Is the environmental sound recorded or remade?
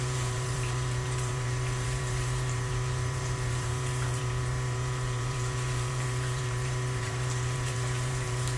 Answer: remade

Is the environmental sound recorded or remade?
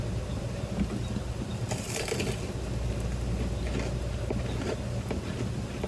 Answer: recorded